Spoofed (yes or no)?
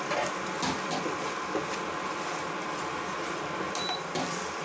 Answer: no